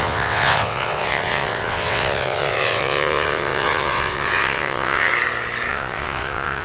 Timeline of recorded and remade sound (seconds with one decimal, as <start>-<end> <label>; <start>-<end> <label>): 0.0-5.1 remade; 5.1-5.7 recorded; 5.7-6.6 remade